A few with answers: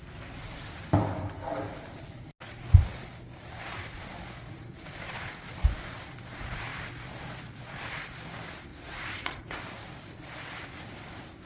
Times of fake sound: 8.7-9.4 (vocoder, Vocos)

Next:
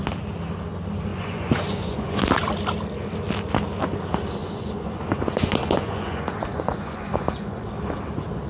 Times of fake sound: 1.1-2.2 (vocoder, Vocos); 4.4-7.7

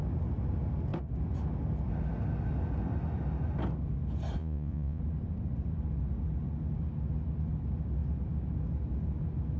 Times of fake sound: 4.4-5.0 (vocoder, Vocos)

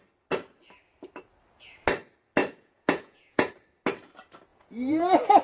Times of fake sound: 2.4-3.5 (vocoder, Vocos); 4.5-5.4

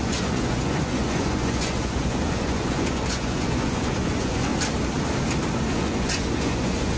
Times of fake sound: 0.0-4.5 (vocoder, Vocos); 5.7-7.0

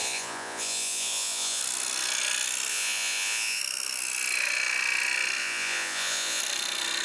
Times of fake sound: 0.0-1.6 (vocoder, Vocos); 2.7-3.6; 5.4-6.4